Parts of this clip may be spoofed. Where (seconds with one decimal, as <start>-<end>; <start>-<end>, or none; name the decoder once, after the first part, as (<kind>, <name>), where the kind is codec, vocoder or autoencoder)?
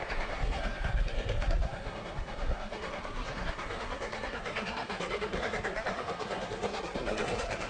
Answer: 0.0-7.7 (codec, SNAC)